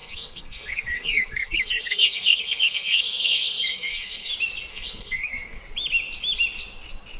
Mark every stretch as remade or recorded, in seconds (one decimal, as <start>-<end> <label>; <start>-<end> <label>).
0.0-4.3 remade; 4.3-4.7 recorded; 4.7-5.6 remade; 5.6-7.2 recorded